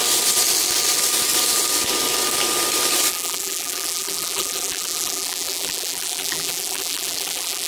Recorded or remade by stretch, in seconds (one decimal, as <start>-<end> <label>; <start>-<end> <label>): 0.0-3.1 recorded; 3.1-7.7 remade